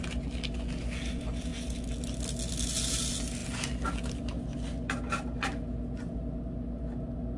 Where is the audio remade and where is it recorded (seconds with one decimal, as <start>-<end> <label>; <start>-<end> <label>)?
0.0-7.4 recorded